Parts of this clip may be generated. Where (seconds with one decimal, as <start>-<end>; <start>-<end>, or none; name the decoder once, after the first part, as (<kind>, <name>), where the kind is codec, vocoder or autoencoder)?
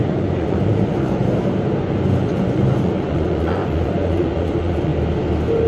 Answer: 0.0-1.2 (vocoder, Vocos); 1.8-4.9